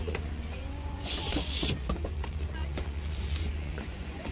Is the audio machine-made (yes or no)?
yes